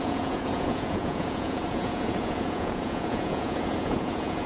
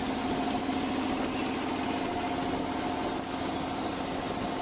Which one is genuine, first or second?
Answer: second